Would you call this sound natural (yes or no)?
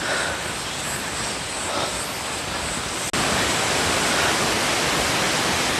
yes